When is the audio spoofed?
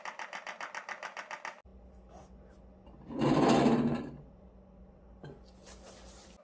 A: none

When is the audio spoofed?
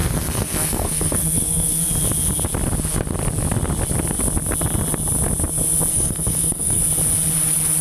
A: 0.0-1.8 (codec, SNAC); 5.9-6.8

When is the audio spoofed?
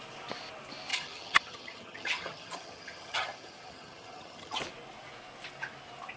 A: 0.9-4.6 (vocoder, HiFi-GAN)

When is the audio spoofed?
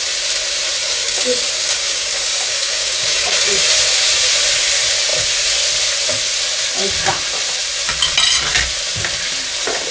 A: 0.8-3.7 (codec, DAC)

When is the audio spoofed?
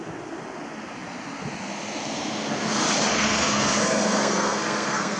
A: 3.1-5.2 (codec, SNAC)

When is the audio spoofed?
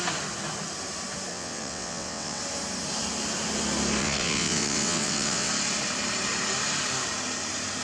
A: 1.3-2.4 (vocoder, WaveNeXt); 4.0-5.5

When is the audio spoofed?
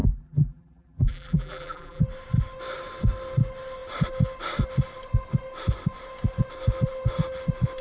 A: 0.0-2.0 (vocoder, BigVGAN v2)